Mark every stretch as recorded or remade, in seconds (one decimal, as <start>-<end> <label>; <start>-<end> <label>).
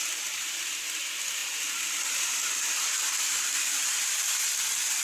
0.0-5.0 recorded